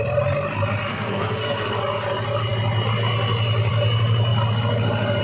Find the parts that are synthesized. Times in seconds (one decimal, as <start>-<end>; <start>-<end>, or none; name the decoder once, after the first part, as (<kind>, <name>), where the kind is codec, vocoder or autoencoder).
0.9-1.8 (codec, SNAC)